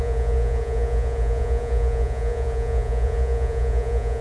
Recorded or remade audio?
remade